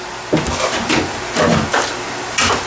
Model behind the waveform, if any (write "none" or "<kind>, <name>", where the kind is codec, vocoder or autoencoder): none